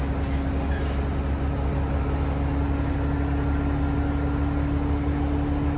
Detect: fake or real real